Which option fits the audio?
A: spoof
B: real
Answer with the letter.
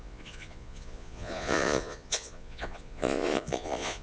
A